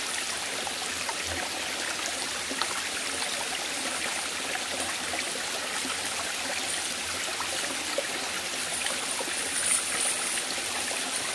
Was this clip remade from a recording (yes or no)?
no